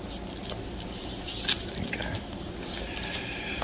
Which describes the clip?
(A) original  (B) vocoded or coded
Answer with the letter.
A